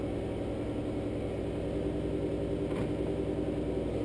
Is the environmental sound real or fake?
real